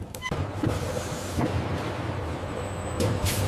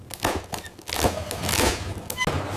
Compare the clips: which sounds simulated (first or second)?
first